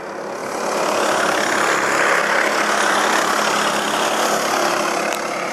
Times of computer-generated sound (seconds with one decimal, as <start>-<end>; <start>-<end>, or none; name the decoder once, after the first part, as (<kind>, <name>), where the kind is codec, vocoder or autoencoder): none